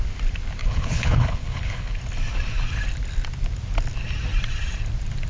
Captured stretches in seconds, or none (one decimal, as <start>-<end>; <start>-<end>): 0.0-0.6; 2.0-5.3